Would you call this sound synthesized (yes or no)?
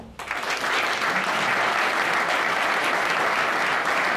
no